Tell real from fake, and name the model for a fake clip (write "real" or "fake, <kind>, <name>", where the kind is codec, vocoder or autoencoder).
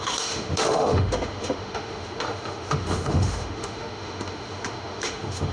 fake, autoencoder, DAC-VAE